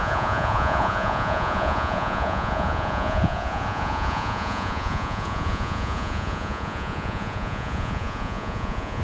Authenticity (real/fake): fake